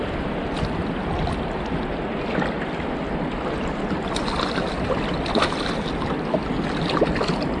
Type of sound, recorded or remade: recorded